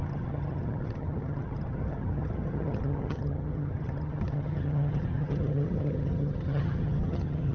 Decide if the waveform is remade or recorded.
remade